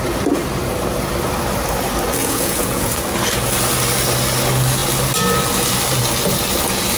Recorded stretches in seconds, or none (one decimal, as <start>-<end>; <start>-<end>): 0.0-2.2; 2.9-7.0